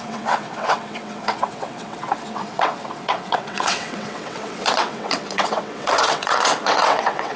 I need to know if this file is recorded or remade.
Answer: remade